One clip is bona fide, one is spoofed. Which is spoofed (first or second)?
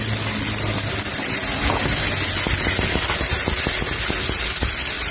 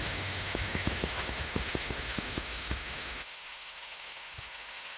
second